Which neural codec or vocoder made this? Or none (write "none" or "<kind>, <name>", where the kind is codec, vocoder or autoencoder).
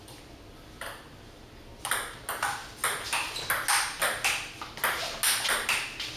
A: none